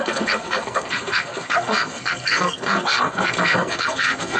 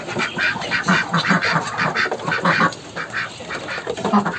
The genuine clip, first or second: second